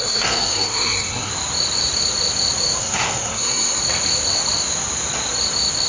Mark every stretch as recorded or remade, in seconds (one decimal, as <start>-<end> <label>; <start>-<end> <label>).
0.0-1.3 remade; 1.3-2.8 recorded; 2.8-3.8 remade; 3.8-5.9 recorded